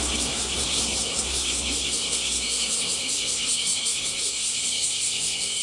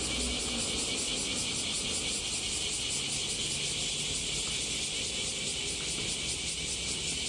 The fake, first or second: first